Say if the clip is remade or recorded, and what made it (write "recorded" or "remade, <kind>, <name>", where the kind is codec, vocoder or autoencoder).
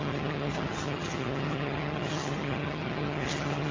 remade, vocoder, HiFi-GAN